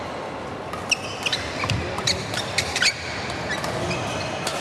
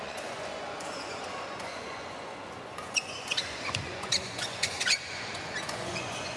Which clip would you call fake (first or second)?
second